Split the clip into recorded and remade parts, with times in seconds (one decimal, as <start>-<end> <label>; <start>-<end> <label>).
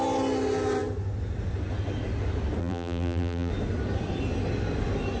0.0-2.6 recorded; 2.6-3.5 remade; 3.5-5.2 recorded